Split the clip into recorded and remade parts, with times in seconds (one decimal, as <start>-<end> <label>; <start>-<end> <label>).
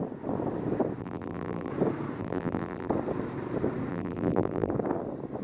0.0-1.0 recorded; 1.0-1.7 remade; 1.7-2.2 recorded; 2.2-2.9 remade; 2.9-3.9 recorded; 3.9-4.7 remade; 4.7-5.4 recorded